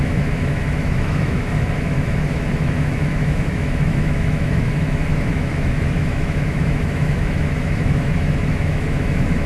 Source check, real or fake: fake